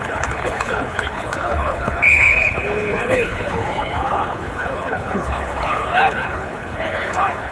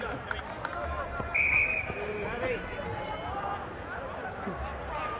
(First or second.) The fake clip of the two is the first